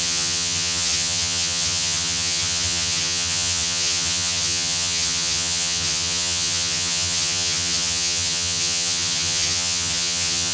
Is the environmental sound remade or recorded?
remade